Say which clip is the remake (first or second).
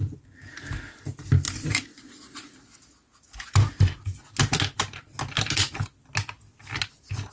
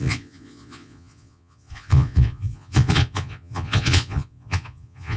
second